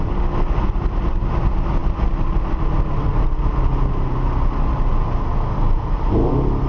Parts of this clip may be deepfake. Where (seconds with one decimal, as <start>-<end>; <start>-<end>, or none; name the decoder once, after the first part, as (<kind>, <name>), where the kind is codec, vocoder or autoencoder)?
none